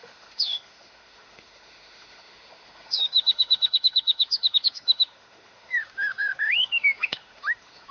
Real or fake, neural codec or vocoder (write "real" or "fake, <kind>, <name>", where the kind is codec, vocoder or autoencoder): fake, autoencoder, DAC-VAE